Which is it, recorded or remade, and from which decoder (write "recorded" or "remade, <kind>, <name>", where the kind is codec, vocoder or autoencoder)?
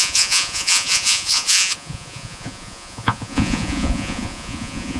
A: remade, vocoder, Vocos